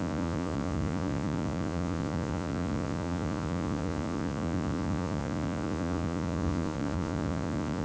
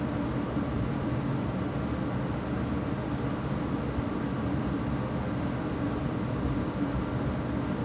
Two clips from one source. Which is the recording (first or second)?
second